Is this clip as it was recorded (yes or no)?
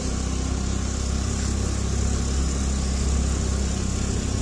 yes